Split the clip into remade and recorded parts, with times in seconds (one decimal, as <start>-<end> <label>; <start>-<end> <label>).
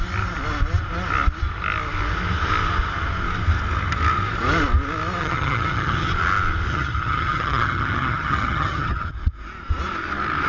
0.0-5.2 recorded; 5.2-6.1 remade; 6.1-6.7 recorded; 6.7-9.1 remade; 9.1-10.5 recorded